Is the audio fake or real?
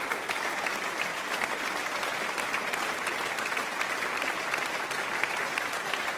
real